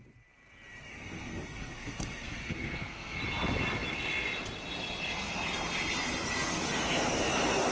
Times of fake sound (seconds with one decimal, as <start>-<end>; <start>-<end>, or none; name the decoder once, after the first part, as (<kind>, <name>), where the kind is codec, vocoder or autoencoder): 0.9-3.2 (codec, SNAC)